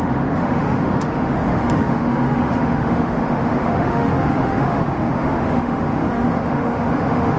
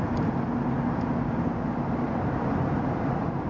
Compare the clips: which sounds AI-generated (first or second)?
first